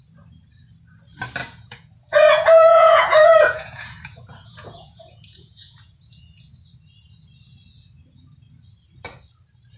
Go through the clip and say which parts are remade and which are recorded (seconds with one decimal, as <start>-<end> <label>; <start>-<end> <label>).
0.0-1.4 recorded; 1.4-6.6 remade; 6.6-9.8 recorded